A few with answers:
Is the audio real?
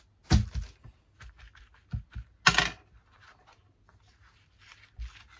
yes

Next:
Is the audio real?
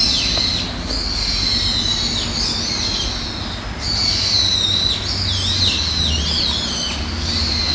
yes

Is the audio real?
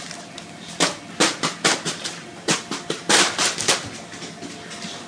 yes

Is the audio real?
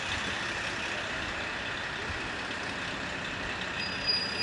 yes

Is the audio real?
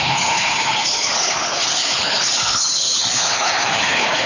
no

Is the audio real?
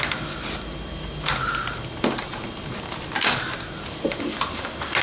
yes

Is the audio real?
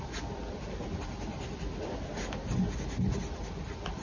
yes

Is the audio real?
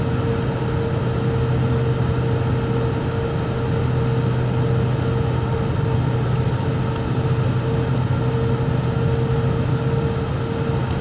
yes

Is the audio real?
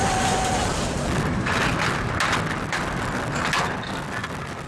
yes